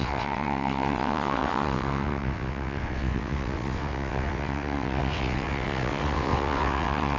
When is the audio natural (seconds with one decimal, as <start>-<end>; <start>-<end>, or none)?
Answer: none